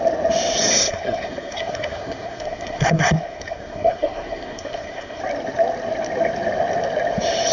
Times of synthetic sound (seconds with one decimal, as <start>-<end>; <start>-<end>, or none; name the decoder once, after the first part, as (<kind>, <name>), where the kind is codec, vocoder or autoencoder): 0.7-5.2 (codec, SNAC)